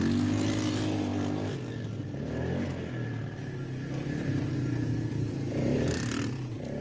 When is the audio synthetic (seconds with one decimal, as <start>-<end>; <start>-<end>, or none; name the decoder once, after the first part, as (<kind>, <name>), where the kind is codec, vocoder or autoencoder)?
none